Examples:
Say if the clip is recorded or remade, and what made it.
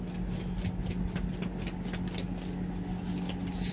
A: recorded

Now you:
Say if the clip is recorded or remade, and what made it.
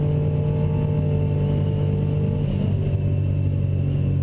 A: recorded